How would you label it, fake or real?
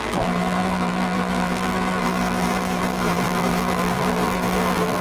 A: fake